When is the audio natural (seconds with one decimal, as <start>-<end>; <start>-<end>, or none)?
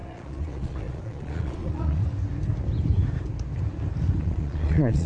2.0-4.2